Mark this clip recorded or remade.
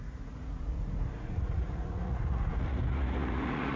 remade